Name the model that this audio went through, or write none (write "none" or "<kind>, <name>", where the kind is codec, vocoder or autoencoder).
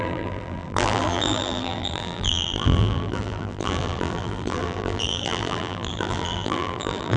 vocoder, BigVGAN v2